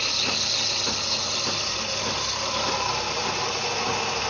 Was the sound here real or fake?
real